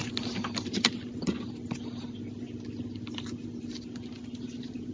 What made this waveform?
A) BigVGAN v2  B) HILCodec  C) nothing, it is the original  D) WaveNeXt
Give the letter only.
C